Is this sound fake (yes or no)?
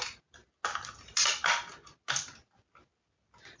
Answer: no